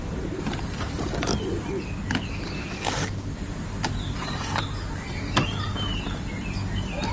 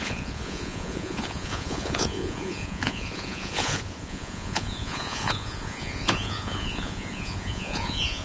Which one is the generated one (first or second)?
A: second